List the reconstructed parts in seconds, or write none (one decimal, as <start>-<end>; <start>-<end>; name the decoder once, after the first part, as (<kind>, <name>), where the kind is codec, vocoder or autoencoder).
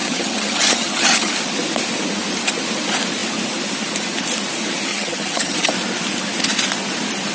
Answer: 0.0-1.3 (vocoder, HiFi-GAN); 4.9-5.7